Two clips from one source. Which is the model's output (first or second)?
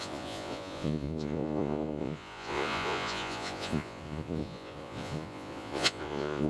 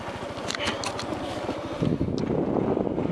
first